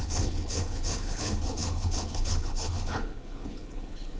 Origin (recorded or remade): remade